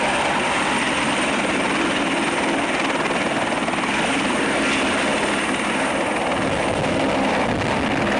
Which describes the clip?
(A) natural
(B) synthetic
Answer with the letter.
A